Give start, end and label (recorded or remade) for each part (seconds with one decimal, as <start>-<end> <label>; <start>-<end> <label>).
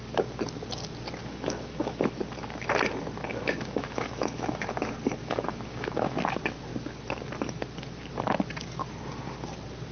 0.0-1.2 recorded; 1.2-2.2 remade; 2.2-3.3 recorded; 3.3-4.7 remade; 4.7-5.2 recorded; 5.2-6.2 remade; 6.2-9.9 recorded